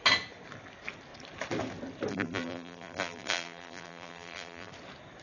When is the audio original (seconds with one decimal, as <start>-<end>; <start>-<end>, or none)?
0.0-2.1; 4.7-5.2